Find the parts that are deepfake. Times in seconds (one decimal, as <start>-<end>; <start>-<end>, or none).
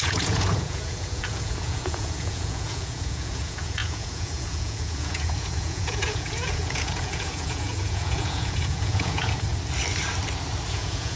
0.0-9.5; 10.7-11.2